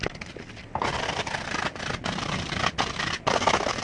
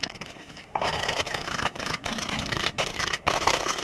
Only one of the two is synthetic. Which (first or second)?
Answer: second